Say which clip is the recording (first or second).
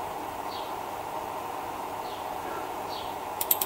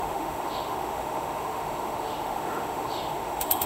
first